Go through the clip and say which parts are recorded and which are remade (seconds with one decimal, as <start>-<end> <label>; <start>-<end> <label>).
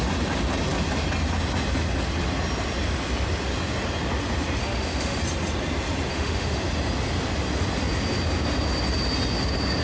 0.0-4.6 recorded; 4.6-5.2 remade; 5.2-6.1 recorded; 6.1-6.6 remade; 6.6-9.8 recorded